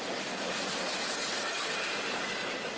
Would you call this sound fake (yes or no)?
no